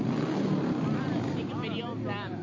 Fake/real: real